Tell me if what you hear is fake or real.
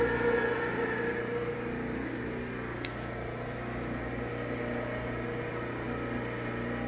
real